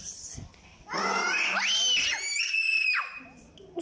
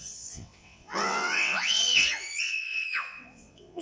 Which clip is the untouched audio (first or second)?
first